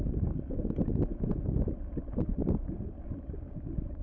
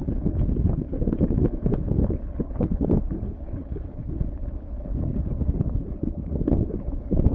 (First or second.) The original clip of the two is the first